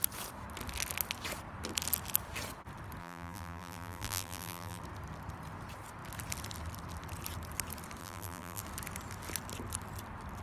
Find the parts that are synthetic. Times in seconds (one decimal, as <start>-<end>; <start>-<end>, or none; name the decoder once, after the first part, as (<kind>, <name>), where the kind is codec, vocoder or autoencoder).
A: 3.0-4.8 (vocoder, BigVGAN v2); 8.0-8.6